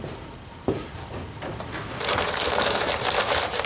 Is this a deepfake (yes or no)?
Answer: no